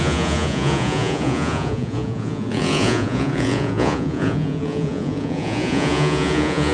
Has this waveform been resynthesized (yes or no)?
yes